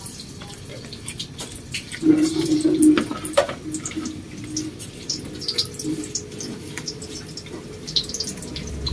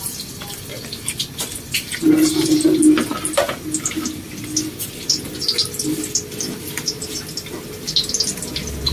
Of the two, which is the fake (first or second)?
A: first